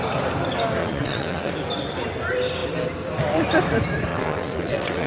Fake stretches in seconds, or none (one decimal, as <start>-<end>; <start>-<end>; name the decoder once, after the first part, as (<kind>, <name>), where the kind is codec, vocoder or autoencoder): 0.8-1.5 (vocoder, WaveNeXt); 4.1-5.1